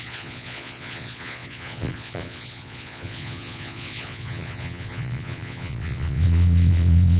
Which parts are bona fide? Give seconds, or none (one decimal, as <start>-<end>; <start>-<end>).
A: none